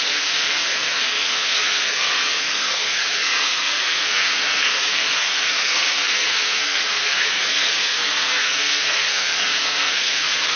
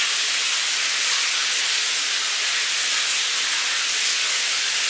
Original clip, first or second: second